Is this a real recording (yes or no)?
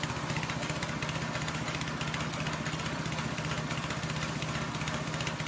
yes